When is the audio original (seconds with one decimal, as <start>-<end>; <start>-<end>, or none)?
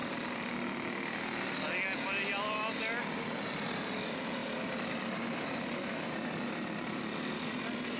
0.0-8.0